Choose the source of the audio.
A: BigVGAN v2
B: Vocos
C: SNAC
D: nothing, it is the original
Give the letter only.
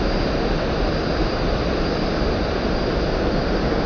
D